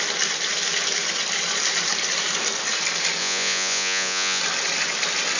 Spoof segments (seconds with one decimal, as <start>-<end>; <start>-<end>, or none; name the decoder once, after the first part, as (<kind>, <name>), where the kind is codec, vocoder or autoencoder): 3.2-4.4 (vocoder, Vocos)